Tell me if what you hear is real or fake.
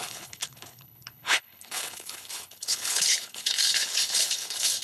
fake